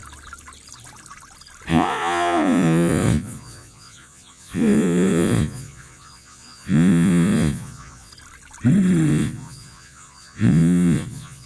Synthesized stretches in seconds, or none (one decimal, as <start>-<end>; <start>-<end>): 1.7-8.1; 9.1-11.5